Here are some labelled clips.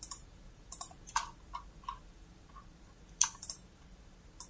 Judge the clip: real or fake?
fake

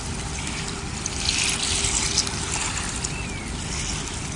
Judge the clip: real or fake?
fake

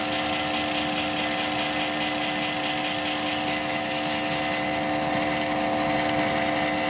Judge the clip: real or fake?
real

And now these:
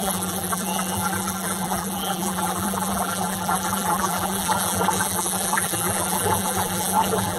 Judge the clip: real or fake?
fake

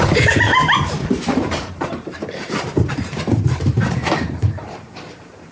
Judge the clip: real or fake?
fake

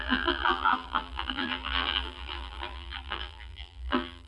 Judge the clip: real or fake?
fake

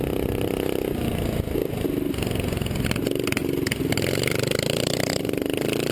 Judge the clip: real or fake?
real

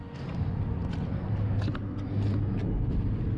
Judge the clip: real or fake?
real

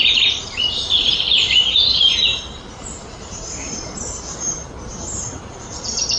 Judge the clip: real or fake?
fake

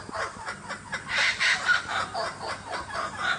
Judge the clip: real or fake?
real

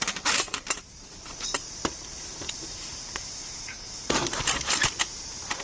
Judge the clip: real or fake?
fake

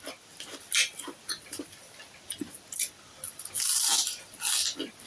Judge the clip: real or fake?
fake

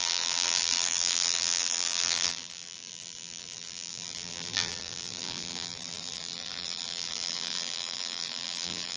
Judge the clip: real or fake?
fake